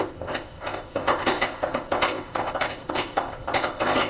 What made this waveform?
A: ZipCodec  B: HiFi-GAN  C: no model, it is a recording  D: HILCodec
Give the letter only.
A